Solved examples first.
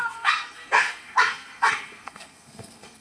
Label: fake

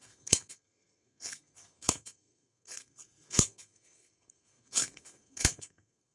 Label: fake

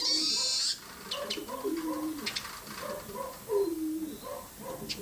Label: real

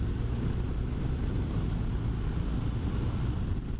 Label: real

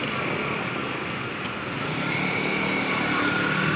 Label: real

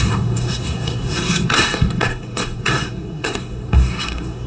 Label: fake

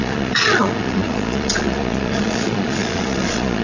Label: fake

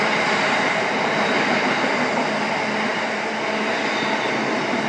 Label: real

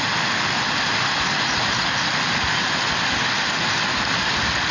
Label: real